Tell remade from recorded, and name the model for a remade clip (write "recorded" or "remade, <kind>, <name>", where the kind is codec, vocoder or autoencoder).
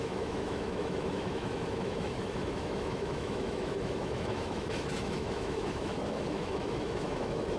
remade, autoencoder, DAC-VAE